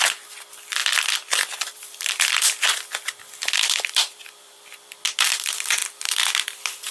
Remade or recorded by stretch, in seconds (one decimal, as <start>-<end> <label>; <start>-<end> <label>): 0.0-0.8 recorded; 0.8-4.9 remade; 4.9-6.9 recorded